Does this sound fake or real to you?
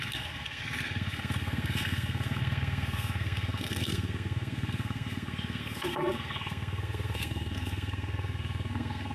fake